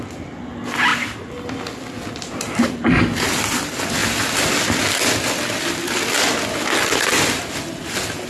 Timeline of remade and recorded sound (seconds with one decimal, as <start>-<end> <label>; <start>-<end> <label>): 0.0-4.0 recorded; 4.0-4.5 remade; 4.5-7.1 recorded; 7.1-7.8 remade; 7.8-8.3 recorded